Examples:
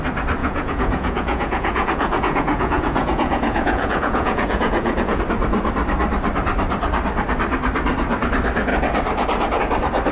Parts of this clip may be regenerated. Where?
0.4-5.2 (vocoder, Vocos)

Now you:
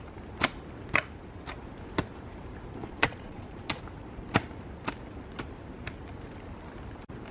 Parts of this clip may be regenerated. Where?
2.8-3.8 (vocoder, Vocos)

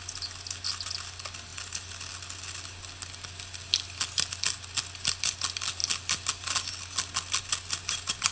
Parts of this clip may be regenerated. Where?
none

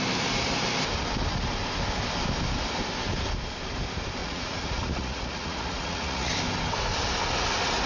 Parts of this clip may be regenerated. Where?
4.2-6.3 (vocoder, Vocos)

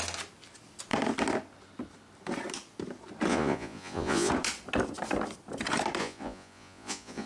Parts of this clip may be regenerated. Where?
3.3-4.3 (vocoder, Vocos); 6.0-7.3

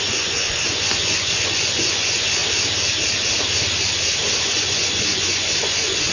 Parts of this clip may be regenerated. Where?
0.0-2.4 (vocoder, Vocos); 4.4-6.1

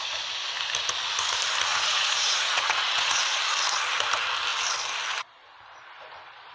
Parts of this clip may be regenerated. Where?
1.7-3.4 (vocoder, Vocos)

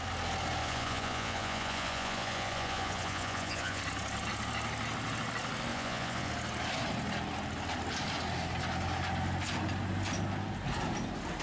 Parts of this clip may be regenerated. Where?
0.6-3.8 (vocoder, Vocos); 5.7-6.3